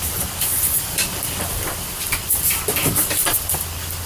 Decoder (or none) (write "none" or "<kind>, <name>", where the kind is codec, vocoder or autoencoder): vocoder, BigVGAN v2